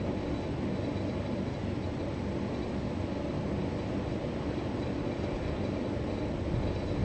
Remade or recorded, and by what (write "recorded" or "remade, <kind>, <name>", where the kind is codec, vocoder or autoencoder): recorded